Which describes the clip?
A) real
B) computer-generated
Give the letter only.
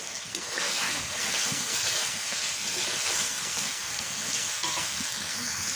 B